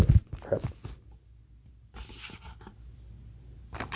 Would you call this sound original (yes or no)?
yes